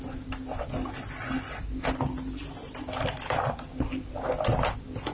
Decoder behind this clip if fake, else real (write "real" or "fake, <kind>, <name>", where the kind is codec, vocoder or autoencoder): real